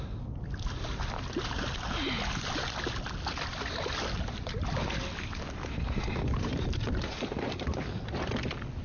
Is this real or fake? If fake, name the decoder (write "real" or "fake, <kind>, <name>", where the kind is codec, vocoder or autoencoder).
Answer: real